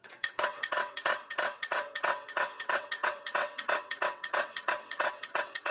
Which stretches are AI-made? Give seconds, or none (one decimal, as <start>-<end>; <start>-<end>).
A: 0.0-5.7